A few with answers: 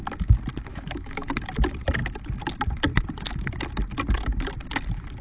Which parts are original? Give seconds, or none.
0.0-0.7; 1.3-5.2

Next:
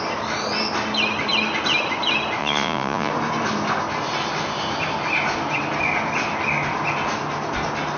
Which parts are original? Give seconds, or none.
0.0-2.4; 3.1-8.0

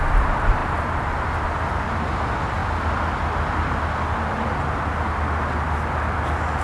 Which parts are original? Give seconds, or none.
0.0-6.6

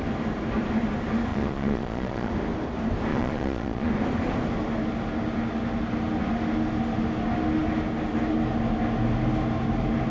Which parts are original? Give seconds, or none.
0.0-1.3; 2.3-3.1; 3.9-10.1

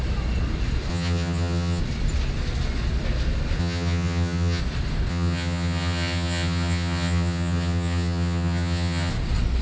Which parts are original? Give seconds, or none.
0.0-0.9; 1.8-3.6; 4.6-5.1; 9.1-9.6